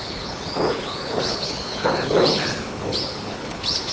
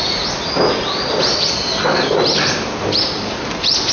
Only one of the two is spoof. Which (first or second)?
first